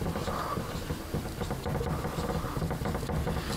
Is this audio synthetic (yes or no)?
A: no